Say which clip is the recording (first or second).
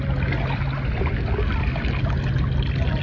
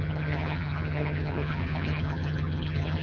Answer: first